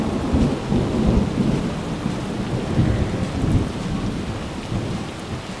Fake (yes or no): no